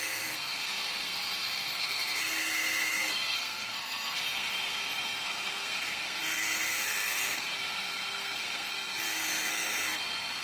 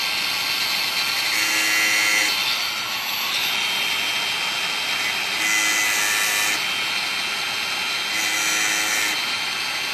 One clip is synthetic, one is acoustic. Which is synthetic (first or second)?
first